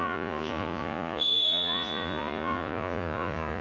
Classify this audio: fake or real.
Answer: fake